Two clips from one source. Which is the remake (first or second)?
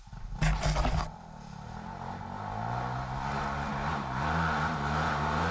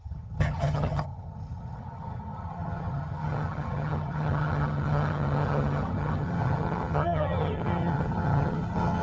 second